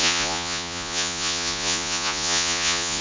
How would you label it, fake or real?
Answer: fake